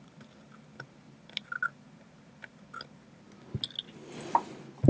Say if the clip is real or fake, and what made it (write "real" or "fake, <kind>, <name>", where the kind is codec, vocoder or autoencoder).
real